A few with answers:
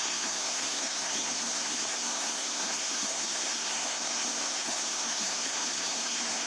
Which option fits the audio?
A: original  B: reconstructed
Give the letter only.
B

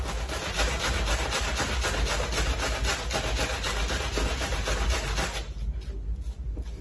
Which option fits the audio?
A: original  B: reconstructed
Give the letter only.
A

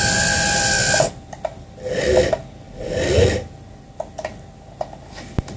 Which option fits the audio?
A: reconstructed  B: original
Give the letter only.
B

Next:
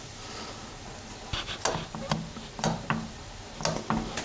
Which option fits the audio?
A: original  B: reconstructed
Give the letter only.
A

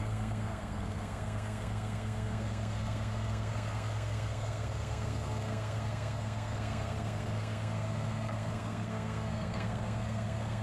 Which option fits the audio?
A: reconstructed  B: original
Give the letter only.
A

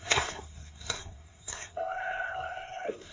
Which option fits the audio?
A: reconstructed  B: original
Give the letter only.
A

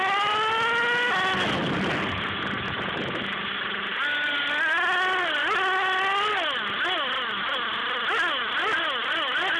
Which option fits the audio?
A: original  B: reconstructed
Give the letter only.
A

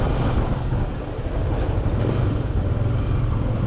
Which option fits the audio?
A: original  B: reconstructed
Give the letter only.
A